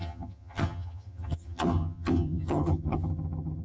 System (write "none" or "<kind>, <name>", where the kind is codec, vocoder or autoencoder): vocoder, HiFi-GAN